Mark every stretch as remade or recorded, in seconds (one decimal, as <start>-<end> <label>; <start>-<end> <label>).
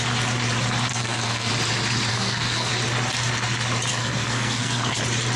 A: 0.0-0.9 recorded; 0.9-1.5 remade; 1.5-2.1 recorded; 2.1-2.7 remade; 2.7-3.9 recorded; 3.9-5.0 remade; 5.0-5.4 recorded